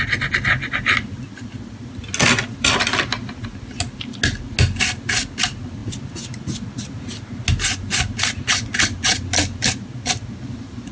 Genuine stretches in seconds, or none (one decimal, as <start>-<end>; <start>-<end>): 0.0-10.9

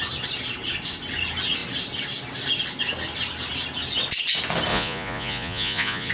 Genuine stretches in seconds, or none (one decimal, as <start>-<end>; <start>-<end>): 0.0-4.7

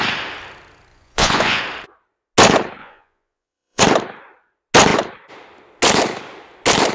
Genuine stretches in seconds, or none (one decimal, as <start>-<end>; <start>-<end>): 0.0-0.9; 1.6-2.8; 3.8-6.9

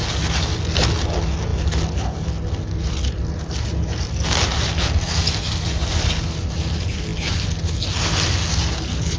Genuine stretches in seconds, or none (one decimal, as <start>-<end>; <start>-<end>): 0.0-9.2